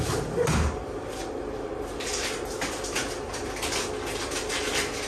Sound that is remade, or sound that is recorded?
recorded